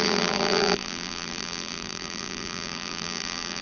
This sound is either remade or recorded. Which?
remade